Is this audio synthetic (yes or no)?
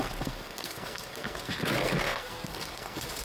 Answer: yes